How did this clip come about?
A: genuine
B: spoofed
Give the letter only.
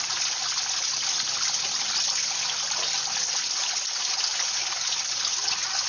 A